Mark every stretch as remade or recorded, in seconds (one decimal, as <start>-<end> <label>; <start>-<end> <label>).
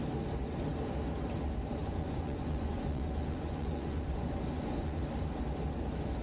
0.0-1.8 recorded; 1.8-5.0 remade; 5.0-6.2 recorded